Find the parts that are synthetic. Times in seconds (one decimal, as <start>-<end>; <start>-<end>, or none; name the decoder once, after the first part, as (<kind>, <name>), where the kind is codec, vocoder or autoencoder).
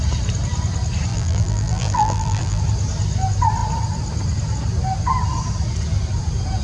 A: 1.1-2.6 (vocoder, BigVGAN v2)